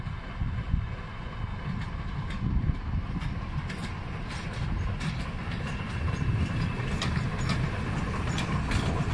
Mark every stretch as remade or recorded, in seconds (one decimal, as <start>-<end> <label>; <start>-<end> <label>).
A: 0.0-0.4 recorded; 0.4-1.4 remade; 1.4-9.1 recorded